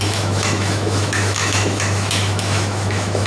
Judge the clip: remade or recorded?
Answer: remade